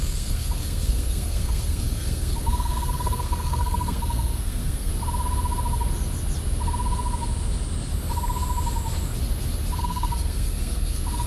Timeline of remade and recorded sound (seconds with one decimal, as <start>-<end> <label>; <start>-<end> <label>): 0.0-4.9 remade; 4.9-9.8 recorded; 9.8-11.3 remade